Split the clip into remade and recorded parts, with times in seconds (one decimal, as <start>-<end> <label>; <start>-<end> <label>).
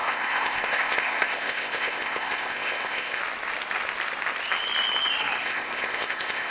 0.0-3.2 remade; 3.2-5.4 recorded; 5.4-6.5 remade